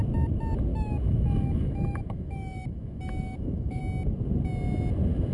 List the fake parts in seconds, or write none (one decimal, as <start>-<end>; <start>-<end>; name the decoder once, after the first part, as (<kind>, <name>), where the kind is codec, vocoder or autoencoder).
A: 0.7-3.8 (autoencoder, DAC-VAE)